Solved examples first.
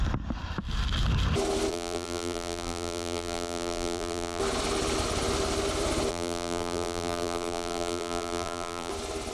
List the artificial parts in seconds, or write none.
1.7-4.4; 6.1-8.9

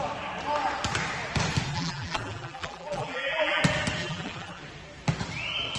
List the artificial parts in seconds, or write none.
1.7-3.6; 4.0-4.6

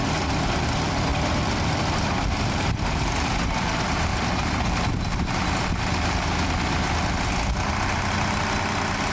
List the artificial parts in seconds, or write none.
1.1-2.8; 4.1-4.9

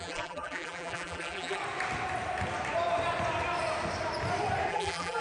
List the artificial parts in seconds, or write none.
0.0-1.6; 4.7-5.2

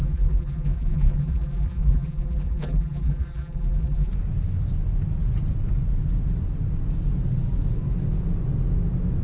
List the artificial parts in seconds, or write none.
0.0-4.1

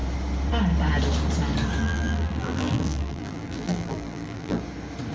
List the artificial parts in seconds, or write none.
1.8-4.6